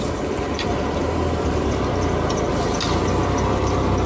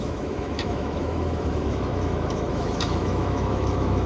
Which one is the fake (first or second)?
second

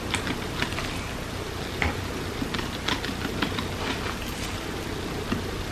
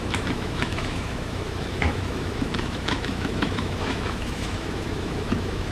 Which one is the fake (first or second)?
second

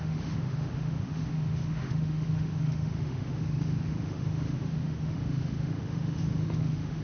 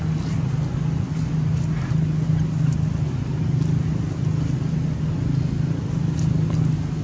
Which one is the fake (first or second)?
first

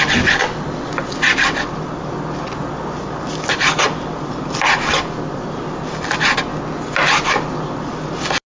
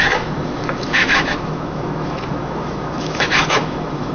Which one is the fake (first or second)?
second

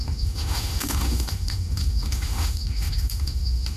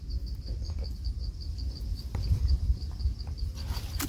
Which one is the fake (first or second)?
first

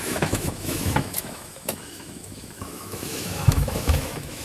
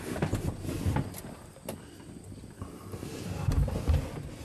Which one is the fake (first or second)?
first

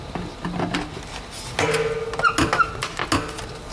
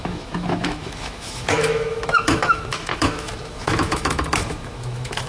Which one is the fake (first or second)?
second